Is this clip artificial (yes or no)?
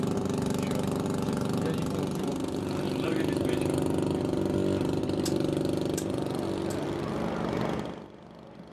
no